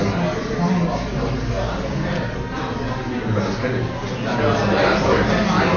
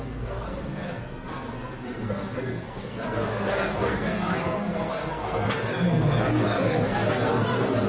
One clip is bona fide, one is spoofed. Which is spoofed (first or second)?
second